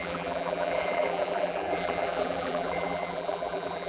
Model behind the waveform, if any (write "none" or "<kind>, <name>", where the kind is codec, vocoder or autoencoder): vocoder, BigVGAN v2